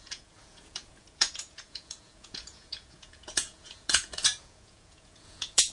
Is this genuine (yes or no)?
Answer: no